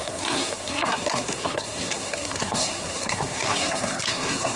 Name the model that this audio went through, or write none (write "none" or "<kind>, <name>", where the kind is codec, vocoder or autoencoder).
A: codec, SNAC